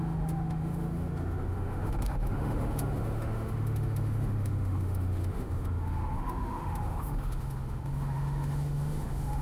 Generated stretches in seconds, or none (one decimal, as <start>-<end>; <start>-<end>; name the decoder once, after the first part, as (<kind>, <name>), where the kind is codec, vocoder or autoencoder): 0.0-9.4 (autoencoder, DAC-VAE)